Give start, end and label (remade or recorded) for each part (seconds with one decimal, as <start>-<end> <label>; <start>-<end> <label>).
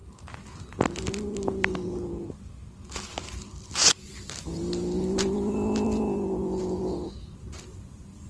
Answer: 0.0-8.3 recorded